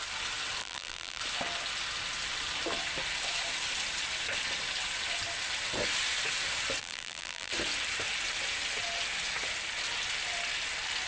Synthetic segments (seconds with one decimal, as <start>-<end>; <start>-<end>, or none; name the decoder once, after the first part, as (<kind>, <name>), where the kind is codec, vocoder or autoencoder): 0.6-1.2 (vocoder, BigVGAN v2); 6.8-7.5